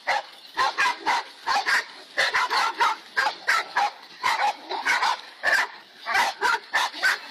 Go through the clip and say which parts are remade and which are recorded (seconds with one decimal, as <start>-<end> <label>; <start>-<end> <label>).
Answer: 0.0-7.3 recorded